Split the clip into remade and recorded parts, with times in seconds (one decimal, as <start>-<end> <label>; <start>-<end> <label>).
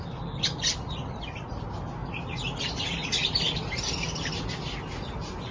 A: 0.0-5.5 recorded